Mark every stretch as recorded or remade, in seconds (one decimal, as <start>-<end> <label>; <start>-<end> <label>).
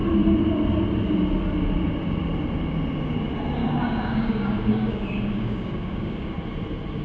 0.0-3.6 recorded; 3.6-6.3 remade; 6.3-7.0 recorded